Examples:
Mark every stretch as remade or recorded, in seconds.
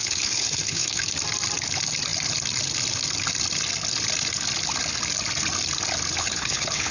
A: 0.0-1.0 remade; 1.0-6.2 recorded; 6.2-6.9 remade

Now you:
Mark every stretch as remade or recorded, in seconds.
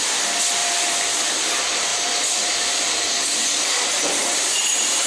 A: 0.0-0.6 recorded; 0.6-1.3 remade; 1.3-1.9 recorded; 1.9-5.1 remade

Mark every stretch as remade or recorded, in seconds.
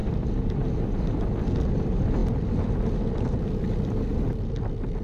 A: 0.0-5.0 recorded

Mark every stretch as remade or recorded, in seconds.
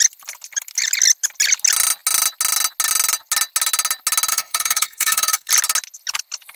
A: 0.0-4.3 recorded; 4.3-5.5 remade; 5.5-6.6 recorded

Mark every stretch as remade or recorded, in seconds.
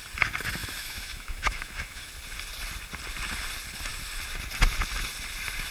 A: 0.0-0.6 recorded; 0.6-2.1 remade; 2.1-5.7 recorded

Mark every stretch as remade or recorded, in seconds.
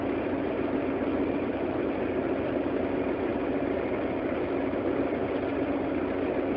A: 0.0-6.6 recorded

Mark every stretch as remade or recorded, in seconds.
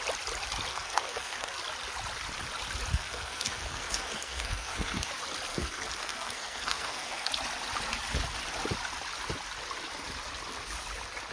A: 0.0-0.7 recorded; 0.7-1.6 remade; 1.6-2.9 recorded; 2.9-5.1 remade; 5.1-5.5 recorded; 5.5-7.3 remade; 7.3-11.3 recorded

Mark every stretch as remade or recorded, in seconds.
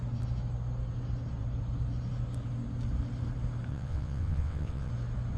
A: 0.0-3.7 recorded; 3.7-4.9 remade; 4.9-5.4 recorded